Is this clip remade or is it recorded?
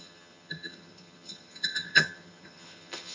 remade